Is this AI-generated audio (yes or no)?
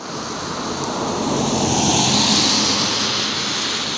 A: no